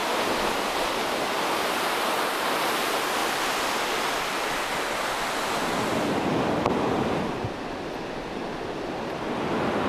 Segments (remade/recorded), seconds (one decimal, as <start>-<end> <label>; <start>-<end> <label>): 0.0-0.7 remade; 0.7-3.2 recorded; 3.2-6.4 remade; 6.4-9.9 recorded